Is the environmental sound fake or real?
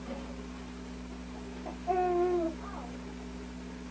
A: real